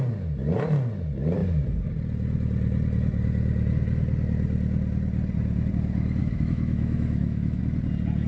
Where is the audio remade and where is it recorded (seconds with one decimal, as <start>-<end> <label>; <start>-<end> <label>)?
0.0-6.2 recorded; 6.2-7.6 remade; 7.6-8.3 recorded